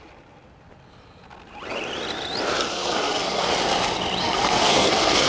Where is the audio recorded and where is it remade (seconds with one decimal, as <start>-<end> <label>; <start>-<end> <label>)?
0.0-2.7 recorded; 2.7-3.5 remade; 3.5-4.2 recorded; 4.2-5.3 remade